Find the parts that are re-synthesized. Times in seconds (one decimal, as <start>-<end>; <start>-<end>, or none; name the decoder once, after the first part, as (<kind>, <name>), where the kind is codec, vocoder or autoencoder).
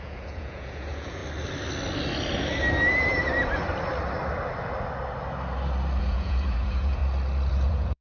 0.0-1.2 (vocoder, Vocos); 6.0-7.0; 7.5-8.0